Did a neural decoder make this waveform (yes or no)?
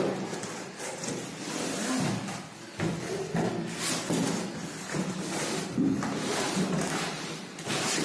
no